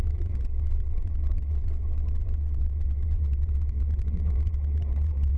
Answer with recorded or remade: remade